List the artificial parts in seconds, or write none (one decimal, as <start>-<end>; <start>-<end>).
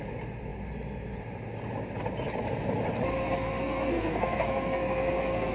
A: 3.2-5.5